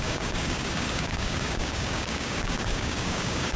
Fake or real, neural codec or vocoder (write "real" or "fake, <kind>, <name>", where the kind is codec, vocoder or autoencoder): fake, codec, DAC